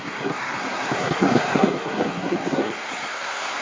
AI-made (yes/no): yes